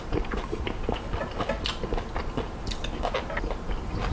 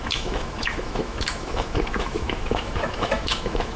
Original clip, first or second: first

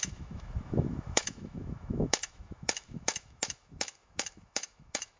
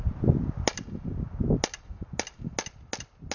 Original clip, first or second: second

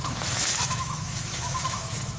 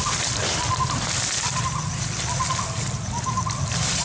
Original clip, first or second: second